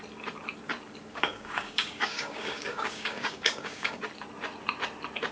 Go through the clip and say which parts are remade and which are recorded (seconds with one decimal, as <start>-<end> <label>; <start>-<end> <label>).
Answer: 0.0-1.1 recorded; 1.1-4.0 remade; 4.0-5.3 recorded